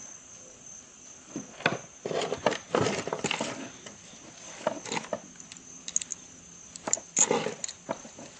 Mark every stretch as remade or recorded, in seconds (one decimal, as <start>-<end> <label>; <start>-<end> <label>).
0.0-8.4 recorded